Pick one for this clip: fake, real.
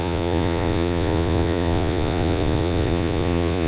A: fake